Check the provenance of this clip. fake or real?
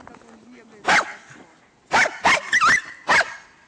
real